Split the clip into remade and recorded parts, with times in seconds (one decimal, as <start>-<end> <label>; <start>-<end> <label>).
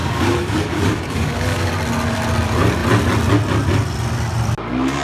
0.0-1.7 remade; 1.7-5.0 recorded